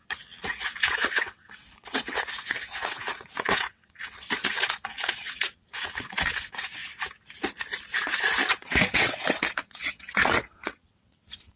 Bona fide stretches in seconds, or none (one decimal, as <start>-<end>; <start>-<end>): 6.8-8.5